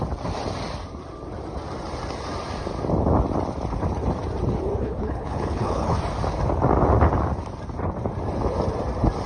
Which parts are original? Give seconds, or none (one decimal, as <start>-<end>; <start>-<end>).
0.0-4.8; 6.0-9.3